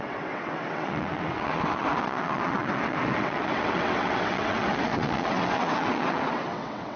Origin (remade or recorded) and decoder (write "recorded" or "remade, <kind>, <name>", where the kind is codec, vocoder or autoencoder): remade, vocoder, WaveNeXt